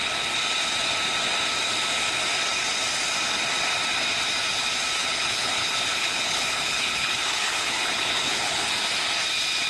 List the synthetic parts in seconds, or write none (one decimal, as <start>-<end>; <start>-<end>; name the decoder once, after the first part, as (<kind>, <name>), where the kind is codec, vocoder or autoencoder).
5.0-8.7 (codec, HILCodec)